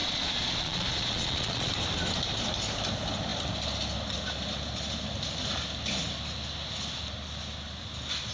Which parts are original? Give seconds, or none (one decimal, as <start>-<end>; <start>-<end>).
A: 1.7-8.3